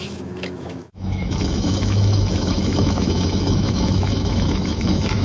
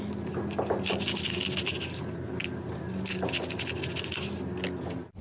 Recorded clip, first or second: second